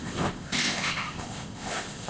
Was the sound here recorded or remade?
remade